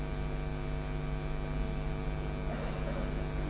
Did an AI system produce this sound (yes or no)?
no